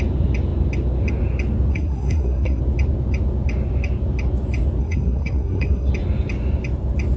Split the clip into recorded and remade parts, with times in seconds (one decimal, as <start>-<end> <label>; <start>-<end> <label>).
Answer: 0.0-1.7 recorded; 1.7-2.6 remade; 2.6-4.8 recorded; 4.8-5.9 remade; 5.9-7.2 recorded